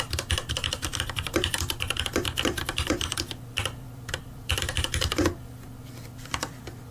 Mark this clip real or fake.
fake